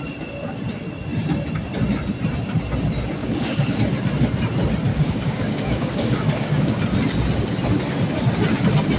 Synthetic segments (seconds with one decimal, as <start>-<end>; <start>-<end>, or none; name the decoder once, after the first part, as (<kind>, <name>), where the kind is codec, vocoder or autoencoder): 3.2-3.8 (codec, DAC); 4.9-6.7